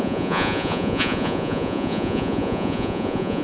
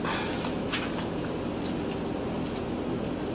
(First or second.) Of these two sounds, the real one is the second